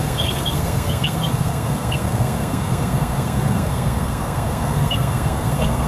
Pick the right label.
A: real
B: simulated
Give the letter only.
B